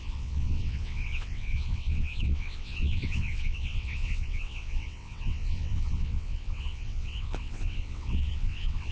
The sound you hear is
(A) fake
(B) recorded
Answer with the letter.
A